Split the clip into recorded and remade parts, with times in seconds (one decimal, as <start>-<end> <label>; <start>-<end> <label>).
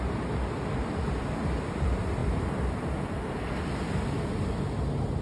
0.0-5.2 recorded